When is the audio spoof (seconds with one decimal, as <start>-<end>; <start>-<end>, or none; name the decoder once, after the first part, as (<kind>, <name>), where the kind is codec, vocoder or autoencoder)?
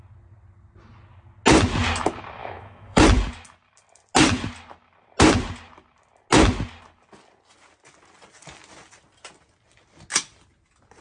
2.4-3.0 (autoencoder, DAC-VAE)